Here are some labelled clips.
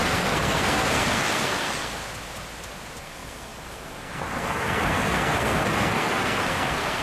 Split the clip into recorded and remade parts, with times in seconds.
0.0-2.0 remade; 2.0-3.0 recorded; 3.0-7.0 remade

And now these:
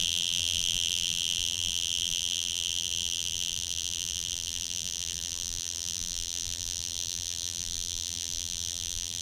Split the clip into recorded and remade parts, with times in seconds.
0.0-9.2 remade